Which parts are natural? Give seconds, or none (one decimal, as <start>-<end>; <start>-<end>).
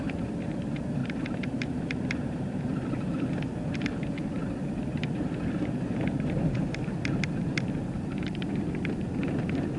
0.0-1.0; 2.6-4.4; 6.0-7.8; 8.4-9.8